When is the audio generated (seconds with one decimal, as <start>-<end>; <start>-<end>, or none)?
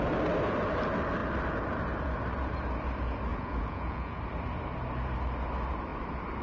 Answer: 3.3-4.2